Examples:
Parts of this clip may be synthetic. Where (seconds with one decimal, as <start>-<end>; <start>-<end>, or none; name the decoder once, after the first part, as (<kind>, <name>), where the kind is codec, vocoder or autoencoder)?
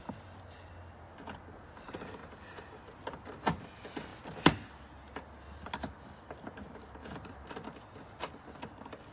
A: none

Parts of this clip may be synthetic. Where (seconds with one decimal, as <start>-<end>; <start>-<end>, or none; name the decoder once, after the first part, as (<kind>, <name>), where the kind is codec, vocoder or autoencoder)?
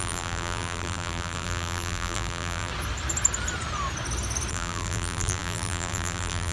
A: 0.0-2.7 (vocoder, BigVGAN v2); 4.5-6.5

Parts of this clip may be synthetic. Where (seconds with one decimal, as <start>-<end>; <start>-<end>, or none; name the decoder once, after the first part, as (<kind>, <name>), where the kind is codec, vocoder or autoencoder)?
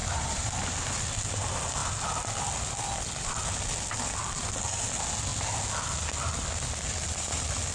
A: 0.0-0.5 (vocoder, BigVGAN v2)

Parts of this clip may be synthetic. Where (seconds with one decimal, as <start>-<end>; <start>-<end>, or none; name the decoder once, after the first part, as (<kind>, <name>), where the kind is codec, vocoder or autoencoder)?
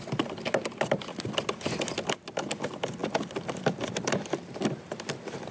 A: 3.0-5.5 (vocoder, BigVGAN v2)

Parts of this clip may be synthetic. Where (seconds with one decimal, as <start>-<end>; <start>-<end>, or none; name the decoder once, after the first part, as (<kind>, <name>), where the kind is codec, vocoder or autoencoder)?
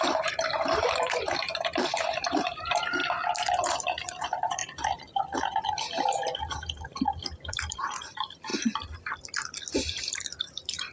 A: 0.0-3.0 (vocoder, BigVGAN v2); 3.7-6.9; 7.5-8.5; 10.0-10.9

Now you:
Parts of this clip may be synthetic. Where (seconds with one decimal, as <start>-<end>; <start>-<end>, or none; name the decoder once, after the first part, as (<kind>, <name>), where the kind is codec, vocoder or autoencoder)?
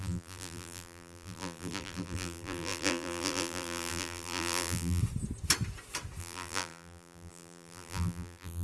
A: 0.0-5.0 (vocoder, BigVGAN v2); 6.2-8.6